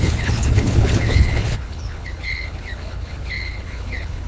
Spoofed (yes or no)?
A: yes